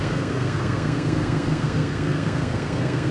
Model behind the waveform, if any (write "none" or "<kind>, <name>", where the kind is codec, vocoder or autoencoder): codec, SNAC